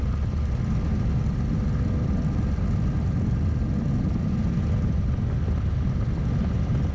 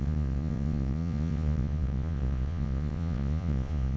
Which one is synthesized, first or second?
second